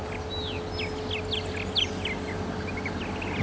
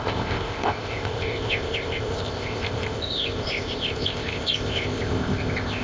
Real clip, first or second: first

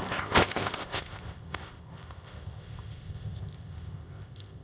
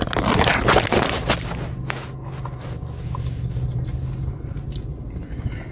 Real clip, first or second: second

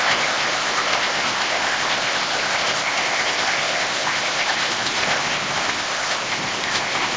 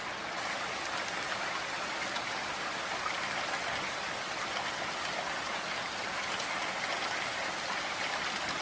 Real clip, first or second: second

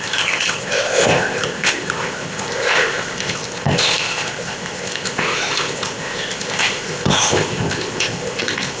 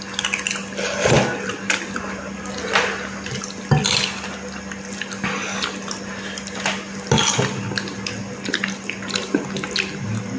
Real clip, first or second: second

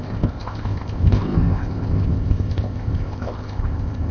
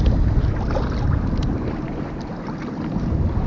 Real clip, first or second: second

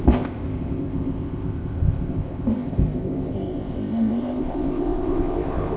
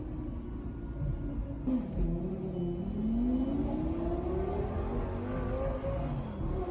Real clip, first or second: second